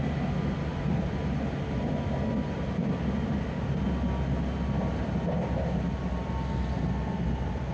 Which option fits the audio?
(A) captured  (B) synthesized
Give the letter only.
A